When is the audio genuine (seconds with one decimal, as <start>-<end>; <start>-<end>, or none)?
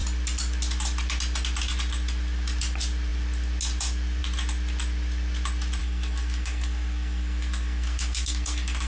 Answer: 0.0-5.8